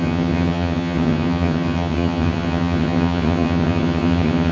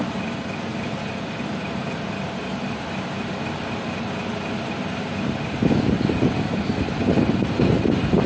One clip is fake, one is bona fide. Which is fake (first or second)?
first